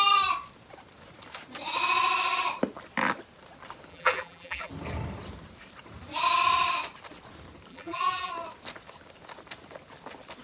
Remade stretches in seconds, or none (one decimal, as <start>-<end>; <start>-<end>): 3.9-4.7; 7.7-8.3